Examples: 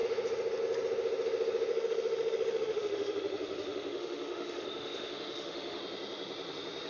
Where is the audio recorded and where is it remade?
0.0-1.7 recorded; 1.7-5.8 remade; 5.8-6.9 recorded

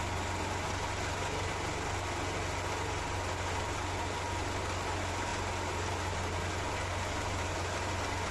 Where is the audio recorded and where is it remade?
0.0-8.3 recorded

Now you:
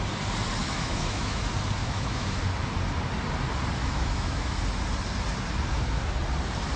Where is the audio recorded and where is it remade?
0.0-0.6 recorded; 0.6-1.4 remade; 1.4-1.8 recorded; 1.8-2.4 remade; 2.4-3.8 recorded; 3.8-4.6 remade; 4.6-6.8 recorded